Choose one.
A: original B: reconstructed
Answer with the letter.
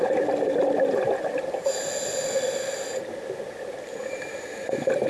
A